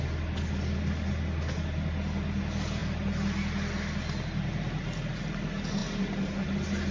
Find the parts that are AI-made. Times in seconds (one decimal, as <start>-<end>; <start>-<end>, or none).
none